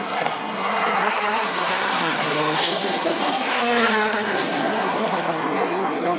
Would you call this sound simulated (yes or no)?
yes